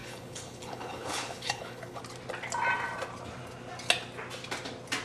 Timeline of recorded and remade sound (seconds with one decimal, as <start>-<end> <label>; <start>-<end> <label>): 0.0-2.0 remade; 2.0-5.0 recorded